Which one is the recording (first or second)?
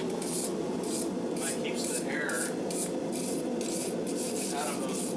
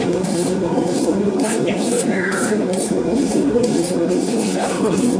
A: first